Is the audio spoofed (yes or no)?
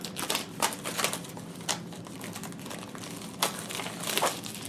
no